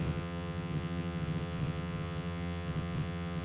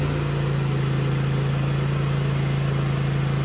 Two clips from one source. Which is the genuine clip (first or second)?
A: second